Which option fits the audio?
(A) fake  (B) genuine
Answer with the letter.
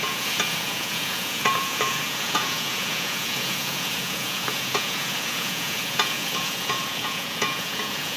A